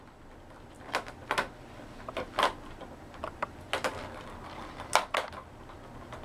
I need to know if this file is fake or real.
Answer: real